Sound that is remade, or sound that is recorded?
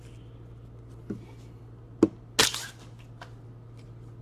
recorded